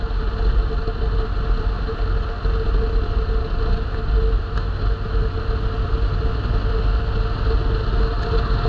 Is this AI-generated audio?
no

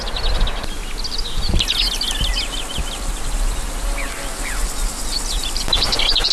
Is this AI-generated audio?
no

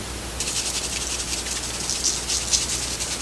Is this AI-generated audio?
no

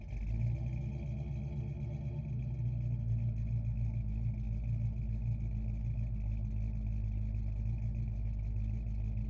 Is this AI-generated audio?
no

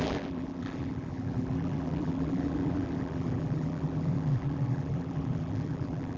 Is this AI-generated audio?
yes